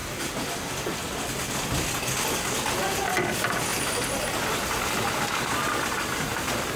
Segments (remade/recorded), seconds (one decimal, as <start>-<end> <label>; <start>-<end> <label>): 0.0-1.9 remade; 1.9-6.3 recorded; 6.3-6.8 remade